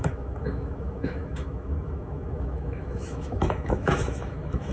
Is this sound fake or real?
fake